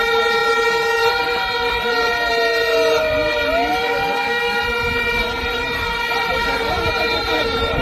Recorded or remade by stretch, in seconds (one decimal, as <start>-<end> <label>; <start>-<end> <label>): 0.0-3.7 recorded; 3.7-4.6 remade; 4.6-7.8 recorded